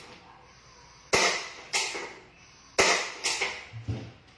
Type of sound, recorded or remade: recorded